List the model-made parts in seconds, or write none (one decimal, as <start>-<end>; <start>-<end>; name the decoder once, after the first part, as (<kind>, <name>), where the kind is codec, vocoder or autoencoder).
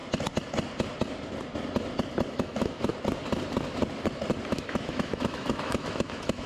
2.3-2.9 (autoencoder, DAC-VAE); 4.5-6.5